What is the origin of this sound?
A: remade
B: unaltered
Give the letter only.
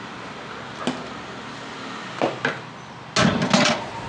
B